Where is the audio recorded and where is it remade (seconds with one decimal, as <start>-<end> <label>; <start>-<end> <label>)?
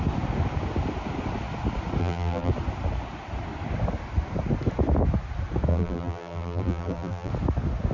0.0-2.0 recorded; 2.0-2.5 remade; 2.5-5.7 recorded; 5.7-7.3 remade; 7.3-7.9 recorded